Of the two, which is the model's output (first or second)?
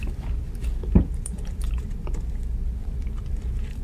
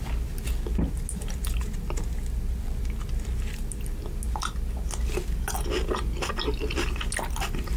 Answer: first